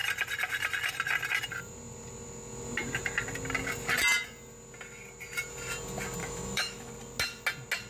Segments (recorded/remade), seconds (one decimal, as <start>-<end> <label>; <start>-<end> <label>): 0.0-6.2 recorded; 6.2-6.9 remade; 6.9-7.9 recorded